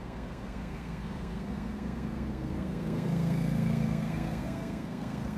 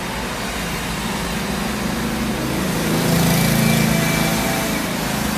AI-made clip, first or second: first